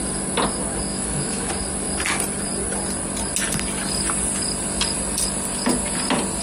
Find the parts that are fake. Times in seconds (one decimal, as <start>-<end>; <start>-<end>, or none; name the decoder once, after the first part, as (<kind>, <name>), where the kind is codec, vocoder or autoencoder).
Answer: 0.9-1.5 (autoencoder, DAC-VAE)